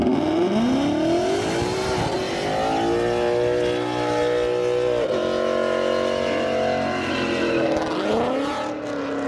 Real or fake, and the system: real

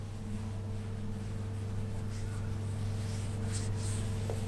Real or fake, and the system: real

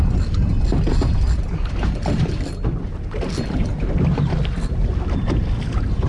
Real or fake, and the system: real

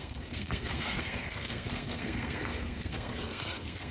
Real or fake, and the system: fake, codec, SNAC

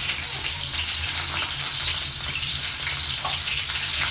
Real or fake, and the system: fake, vocoder, BigVGAN v2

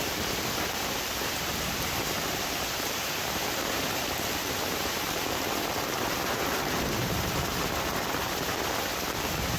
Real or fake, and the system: fake, vocoder, BigVGAN v2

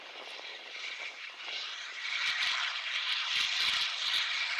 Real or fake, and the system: fake, vocoder, BigVGAN v2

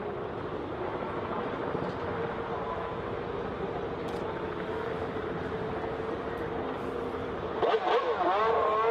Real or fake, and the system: real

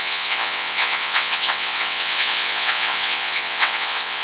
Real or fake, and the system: fake, vocoder, WaveNeXt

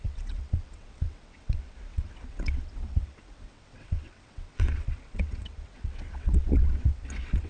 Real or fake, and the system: fake, vocoder, WaveNeXt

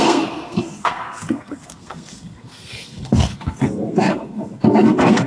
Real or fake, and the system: fake, codec, SNAC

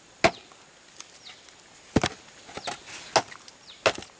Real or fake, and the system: real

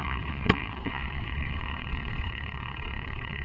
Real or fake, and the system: fake, vocoder, WaveNeXt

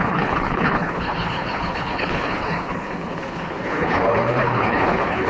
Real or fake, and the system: fake, codec, HILCodec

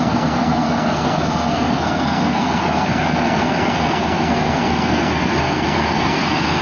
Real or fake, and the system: fake, codec, SNAC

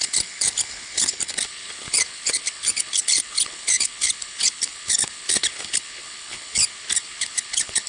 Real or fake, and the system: fake, codec, HILCodec